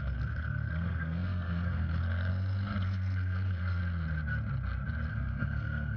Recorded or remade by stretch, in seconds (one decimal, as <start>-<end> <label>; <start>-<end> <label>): 0.0-3.8 remade; 3.8-5.1 recorded; 5.1-6.0 remade